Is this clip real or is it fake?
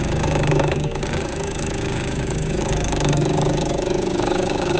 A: fake